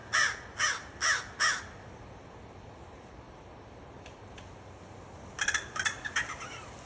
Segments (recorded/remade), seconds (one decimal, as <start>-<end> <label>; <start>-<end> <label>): 0.0-6.9 recorded